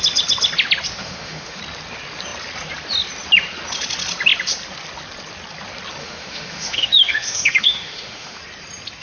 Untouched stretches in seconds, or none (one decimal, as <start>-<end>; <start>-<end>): 0.0-1.0; 1.6-6.0; 8.4-9.0